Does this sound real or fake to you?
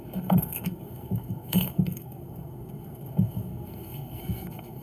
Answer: fake